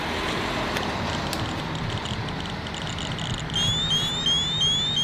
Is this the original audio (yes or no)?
yes